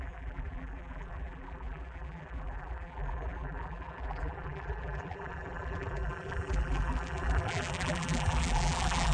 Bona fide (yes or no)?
no